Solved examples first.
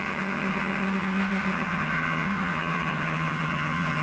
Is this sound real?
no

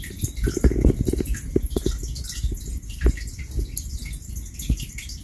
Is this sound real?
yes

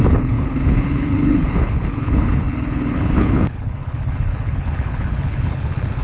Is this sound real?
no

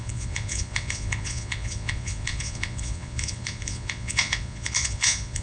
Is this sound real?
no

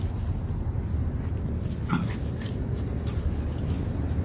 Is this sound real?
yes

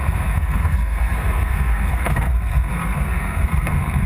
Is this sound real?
no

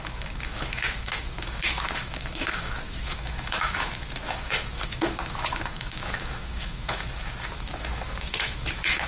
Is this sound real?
no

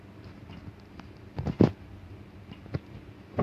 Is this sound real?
yes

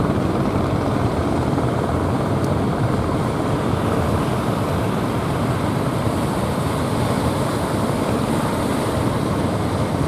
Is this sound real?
no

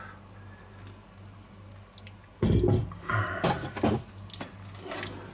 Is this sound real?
yes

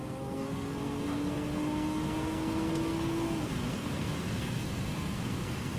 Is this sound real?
no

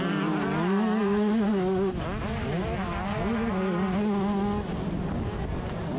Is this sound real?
yes